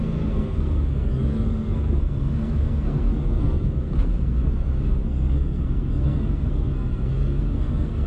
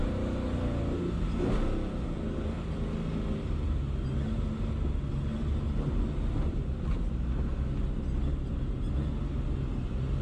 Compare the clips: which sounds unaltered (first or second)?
second